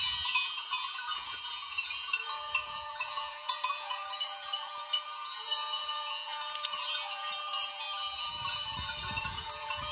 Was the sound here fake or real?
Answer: fake